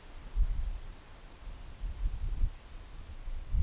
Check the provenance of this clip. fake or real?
real